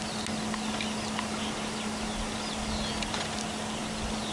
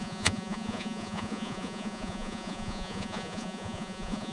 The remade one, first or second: second